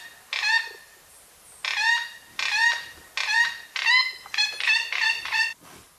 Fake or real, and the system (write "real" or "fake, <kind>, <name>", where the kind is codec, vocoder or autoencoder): real